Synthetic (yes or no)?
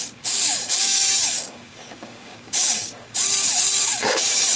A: yes